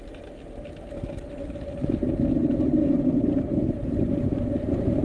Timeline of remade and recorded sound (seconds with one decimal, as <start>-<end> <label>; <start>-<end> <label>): 0.0-2.8 recorded; 2.8-3.4 remade; 3.4-5.0 recorded